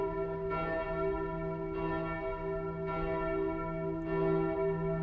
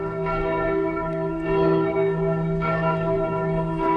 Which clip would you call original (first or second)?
first